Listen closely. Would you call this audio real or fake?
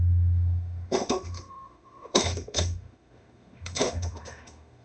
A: fake